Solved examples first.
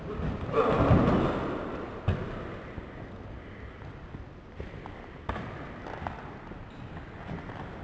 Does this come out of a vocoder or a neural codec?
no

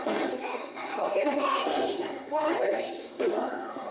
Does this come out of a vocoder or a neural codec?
yes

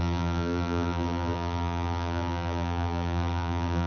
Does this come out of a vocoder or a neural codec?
yes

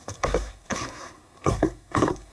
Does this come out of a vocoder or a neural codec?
yes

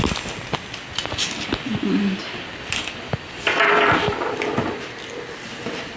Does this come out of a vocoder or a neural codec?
no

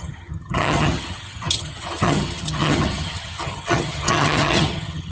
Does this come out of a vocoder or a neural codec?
yes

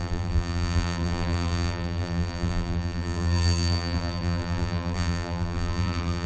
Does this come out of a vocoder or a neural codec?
yes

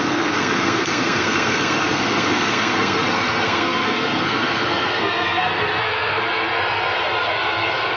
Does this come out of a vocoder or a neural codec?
yes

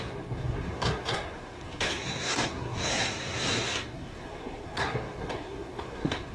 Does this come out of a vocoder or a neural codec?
yes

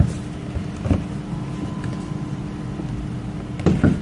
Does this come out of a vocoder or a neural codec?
no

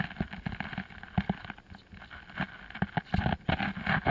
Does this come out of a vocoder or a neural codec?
no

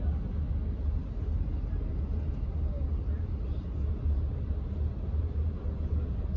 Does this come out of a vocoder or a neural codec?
no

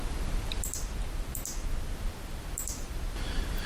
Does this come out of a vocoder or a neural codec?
yes